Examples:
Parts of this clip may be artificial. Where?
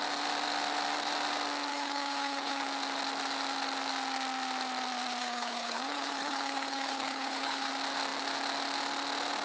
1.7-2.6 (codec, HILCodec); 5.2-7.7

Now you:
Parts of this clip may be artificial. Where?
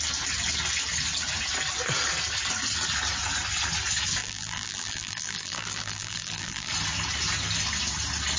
4.2-6.7 (vocoder, BigVGAN v2)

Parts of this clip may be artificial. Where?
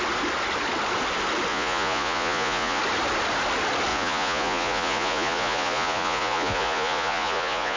1.5-2.8 (vocoder, Vocos); 3.9-7.8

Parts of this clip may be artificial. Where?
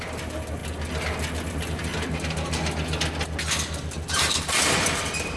0.0-0.6 (vocoder, BigVGAN v2); 1.5-1.9; 4.1-5.4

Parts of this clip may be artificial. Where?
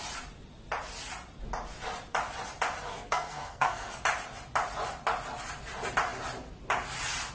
2.9-3.9 (codec, SNAC)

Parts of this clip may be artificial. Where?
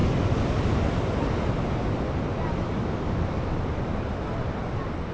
none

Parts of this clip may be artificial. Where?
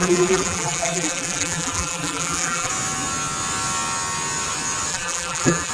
0.0-2.7 (vocoder, BigVGAN v2); 4.9-5.7